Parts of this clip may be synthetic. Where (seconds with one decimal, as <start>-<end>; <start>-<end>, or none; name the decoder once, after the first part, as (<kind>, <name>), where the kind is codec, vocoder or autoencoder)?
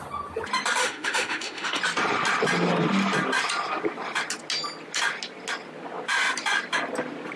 0.8-1.8 (autoencoder, DAC-VAE)